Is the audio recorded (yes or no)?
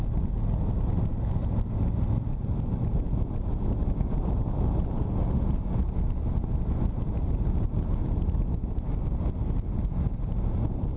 yes